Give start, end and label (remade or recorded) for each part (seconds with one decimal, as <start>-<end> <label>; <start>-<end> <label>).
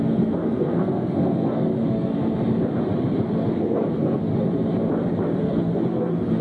0.0-2.1 remade; 2.1-3.5 recorded; 3.5-4.3 remade; 4.3-5.4 recorded; 5.4-6.4 remade